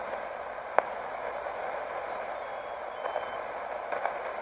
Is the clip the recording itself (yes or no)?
yes